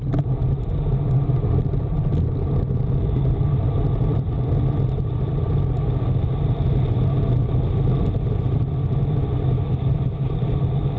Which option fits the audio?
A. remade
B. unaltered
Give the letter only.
B